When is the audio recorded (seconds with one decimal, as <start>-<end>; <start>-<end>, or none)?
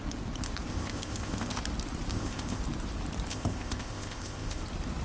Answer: 0.0-0.7; 1.6-2.1; 2.6-3.3; 4.6-5.0